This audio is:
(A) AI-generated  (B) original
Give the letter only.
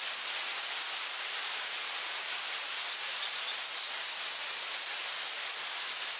B